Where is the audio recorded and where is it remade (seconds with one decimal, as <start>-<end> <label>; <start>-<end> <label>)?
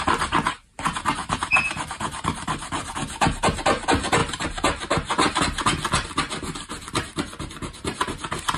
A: 0.0-1.2 recorded; 1.2-2.9 remade; 2.9-4.2 recorded; 4.2-5.4 remade; 5.4-8.6 recorded